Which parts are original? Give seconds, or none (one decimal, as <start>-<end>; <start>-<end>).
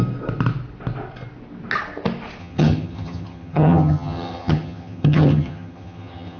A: 0.0-2.4